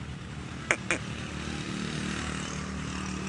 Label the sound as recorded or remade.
recorded